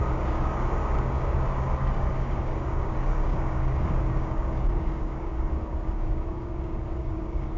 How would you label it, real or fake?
fake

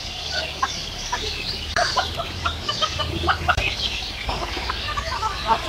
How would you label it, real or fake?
fake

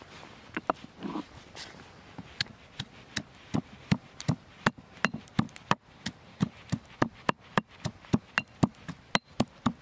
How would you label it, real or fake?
real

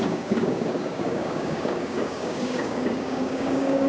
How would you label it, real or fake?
fake